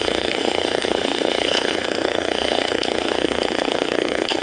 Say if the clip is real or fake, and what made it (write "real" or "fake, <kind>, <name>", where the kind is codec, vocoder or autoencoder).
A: fake, codec, SNAC